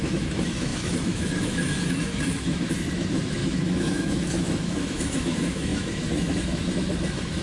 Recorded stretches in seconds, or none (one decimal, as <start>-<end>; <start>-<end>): none